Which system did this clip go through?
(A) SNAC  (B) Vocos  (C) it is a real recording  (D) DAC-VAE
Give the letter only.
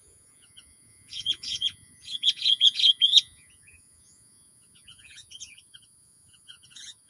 B